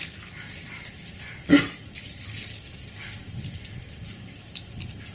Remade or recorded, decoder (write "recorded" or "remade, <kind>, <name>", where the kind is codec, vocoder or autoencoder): recorded